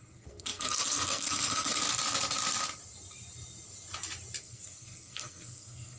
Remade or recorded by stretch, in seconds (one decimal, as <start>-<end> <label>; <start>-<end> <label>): 0.0-1.8 remade; 1.8-4.4 recorded; 4.4-6.0 remade